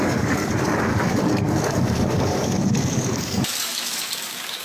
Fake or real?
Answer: fake